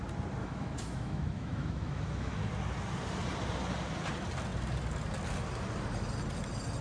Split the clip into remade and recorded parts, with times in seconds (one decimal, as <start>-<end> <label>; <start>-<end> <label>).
0.0-0.4 recorded; 0.4-2.5 remade; 2.5-6.8 recorded